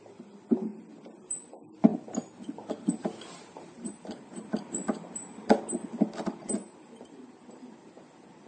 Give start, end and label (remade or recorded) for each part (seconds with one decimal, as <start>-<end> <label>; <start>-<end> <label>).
0.0-1.9 recorded; 1.9-5.6 remade; 5.6-6.6 recorded; 6.6-7.5 remade; 7.5-8.5 recorded